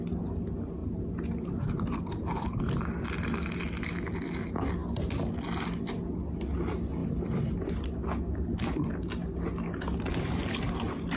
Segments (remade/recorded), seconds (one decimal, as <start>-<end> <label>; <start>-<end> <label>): 0.0-0.8 recorded; 0.8-2.7 remade; 2.7-7.0 recorded; 7.0-7.7 remade; 7.7-11.2 recorded